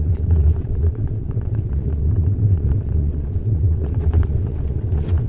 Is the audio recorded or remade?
remade